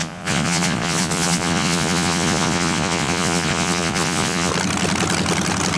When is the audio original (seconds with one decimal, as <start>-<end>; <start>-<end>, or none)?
4.5-5.8